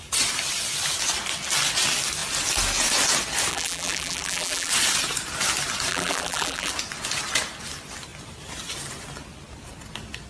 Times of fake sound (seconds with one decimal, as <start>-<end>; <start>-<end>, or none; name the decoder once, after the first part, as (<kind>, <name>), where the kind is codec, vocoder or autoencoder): 3.5-4.7 (vocoder, BigVGAN v2); 5.9-6.7